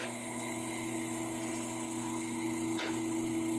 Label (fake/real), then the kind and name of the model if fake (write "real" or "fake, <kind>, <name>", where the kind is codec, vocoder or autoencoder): fake, codec, HILCodec